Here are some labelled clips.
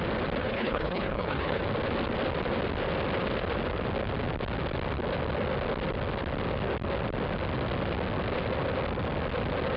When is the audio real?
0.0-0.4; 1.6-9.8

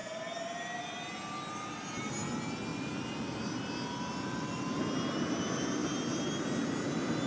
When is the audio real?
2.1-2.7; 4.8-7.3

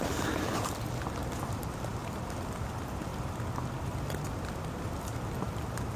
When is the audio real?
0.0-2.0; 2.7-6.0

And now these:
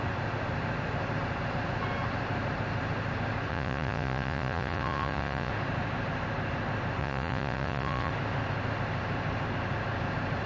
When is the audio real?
0.0-3.5; 5.5-7.0; 8.1-10.5

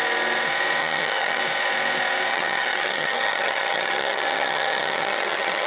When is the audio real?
0.0-0.8; 1.4-2.3

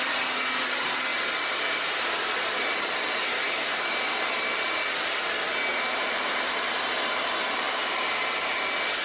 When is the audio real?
0.0-1.1; 4.3-5.7; 6.5-9.0

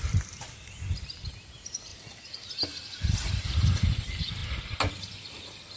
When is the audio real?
1.9-3.1; 4.4-5.0

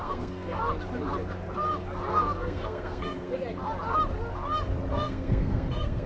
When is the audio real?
0.6-2.1; 3.3-4.9